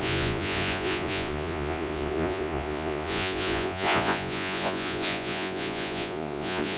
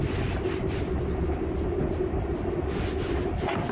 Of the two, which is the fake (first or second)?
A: first